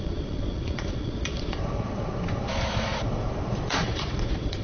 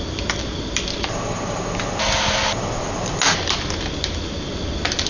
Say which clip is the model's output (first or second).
first